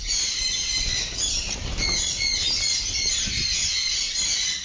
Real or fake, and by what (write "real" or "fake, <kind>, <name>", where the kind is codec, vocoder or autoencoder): real